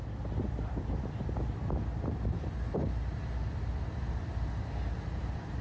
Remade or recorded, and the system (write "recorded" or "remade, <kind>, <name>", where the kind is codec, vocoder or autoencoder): remade, vocoder, BigVGAN v2